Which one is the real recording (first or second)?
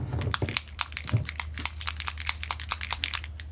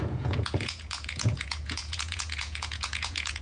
first